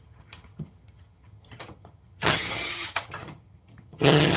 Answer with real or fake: fake